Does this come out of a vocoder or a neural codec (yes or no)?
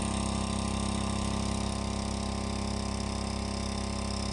no